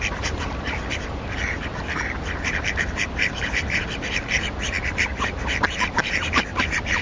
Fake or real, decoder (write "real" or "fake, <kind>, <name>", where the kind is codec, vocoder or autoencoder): fake, vocoder, BigVGAN v2